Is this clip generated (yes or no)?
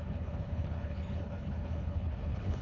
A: yes